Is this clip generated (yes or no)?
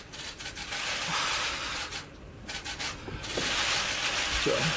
no